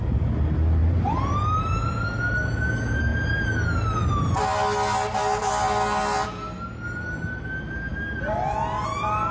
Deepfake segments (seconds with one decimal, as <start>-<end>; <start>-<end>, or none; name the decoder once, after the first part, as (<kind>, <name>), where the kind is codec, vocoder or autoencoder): none